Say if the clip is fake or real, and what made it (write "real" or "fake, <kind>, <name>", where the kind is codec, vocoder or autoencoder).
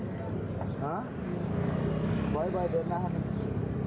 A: real